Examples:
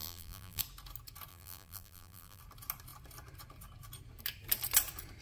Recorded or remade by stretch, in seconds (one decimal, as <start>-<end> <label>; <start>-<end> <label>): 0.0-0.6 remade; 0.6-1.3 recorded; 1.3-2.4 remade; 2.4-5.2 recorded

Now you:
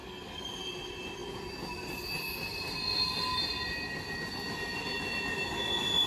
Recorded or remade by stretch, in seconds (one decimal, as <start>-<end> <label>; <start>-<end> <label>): 0.0-0.5 remade; 0.5-6.1 recorded

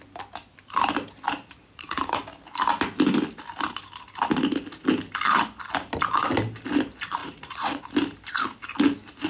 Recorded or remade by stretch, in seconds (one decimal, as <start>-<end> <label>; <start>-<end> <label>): 0.0-1.6 recorded; 1.6-2.2 remade; 2.2-7.2 recorded; 7.2-7.8 remade; 7.8-9.3 recorded

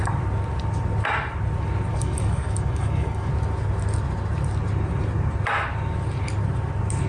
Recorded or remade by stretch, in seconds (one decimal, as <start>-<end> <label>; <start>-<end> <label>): 0.0-1.9 recorded; 1.9-3.3 remade; 3.3-7.1 recorded

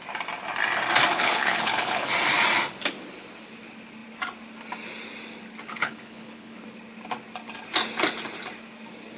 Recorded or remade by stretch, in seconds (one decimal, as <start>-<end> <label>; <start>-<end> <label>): 0.0-1.1 recorded; 1.1-2.1 remade; 2.1-5.7 recorded; 5.7-6.6 remade; 6.6-9.2 recorded

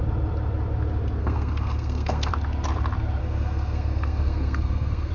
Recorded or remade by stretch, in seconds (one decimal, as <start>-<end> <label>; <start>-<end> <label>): 0.0-1.2 recorded; 1.2-2.3 remade; 2.3-3.2 recorded; 3.2-5.1 remade

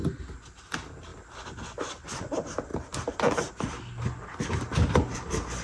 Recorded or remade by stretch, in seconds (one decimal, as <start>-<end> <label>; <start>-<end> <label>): 0.0-5.6 recorded

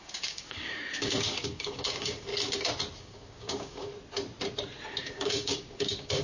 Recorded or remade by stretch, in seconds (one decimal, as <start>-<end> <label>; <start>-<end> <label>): 0.0-2.3 remade; 2.3-3.0 recorded; 3.0-3.9 remade; 3.9-5.0 recorded; 5.0-6.2 remade